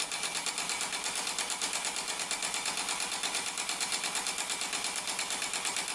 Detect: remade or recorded recorded